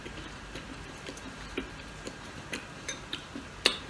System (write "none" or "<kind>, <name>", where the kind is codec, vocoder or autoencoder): vocoder, BigVGAN v2